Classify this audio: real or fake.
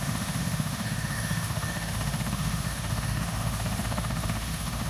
fake